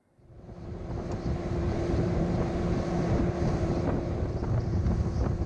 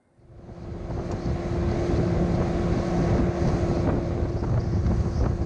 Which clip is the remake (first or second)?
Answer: first